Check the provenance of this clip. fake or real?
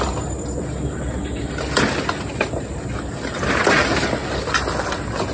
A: real